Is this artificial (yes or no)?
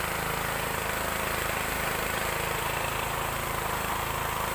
yes